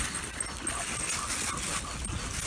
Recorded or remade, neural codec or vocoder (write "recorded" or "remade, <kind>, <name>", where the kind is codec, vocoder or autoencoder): recorded